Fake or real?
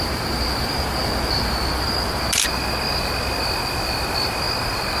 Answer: real